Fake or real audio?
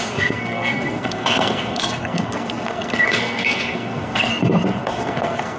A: fake